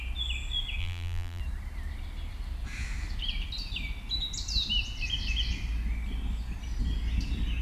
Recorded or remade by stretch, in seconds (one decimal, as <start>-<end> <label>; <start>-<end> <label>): 0.0-0.8 recorded; 0.8-1.4 remade; 1.4-7.6 recorded